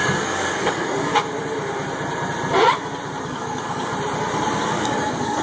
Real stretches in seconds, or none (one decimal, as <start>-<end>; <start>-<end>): 1.1-3.2; 3.9-4.6